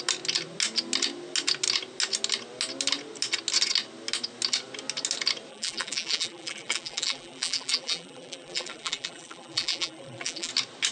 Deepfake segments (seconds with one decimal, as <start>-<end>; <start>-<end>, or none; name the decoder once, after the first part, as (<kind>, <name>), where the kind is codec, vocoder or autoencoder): 5.5-10.5 (vocoder, BigVGAN v2)